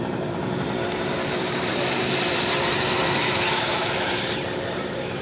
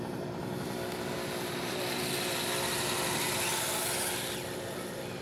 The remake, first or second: first